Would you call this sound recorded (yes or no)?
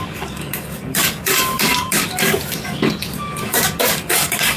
no